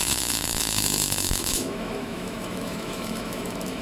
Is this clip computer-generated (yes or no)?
yes